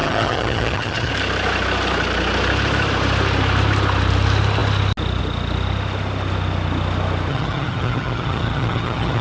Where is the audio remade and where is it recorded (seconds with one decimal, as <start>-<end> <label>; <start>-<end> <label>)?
0.0-1.1 remade; 1.1-7.3 recorded; 7.3-9.2 remade